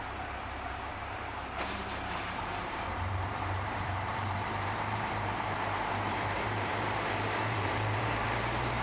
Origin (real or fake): fake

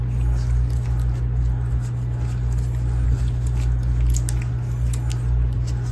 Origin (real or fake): real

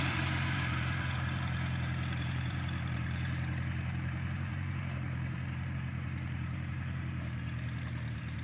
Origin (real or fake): fake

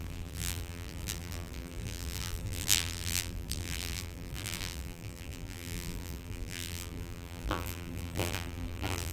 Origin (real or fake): fake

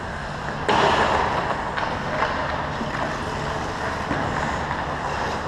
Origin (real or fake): real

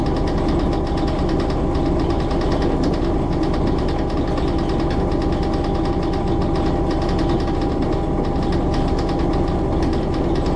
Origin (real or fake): real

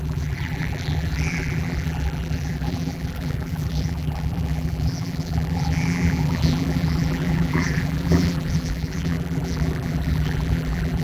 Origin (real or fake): fake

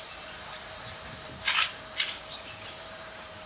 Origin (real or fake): fake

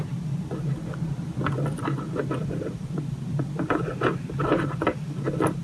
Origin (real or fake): fake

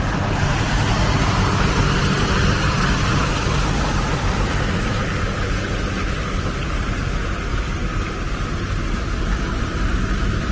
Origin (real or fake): real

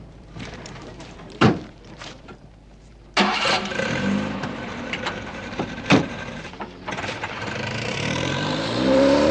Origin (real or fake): fake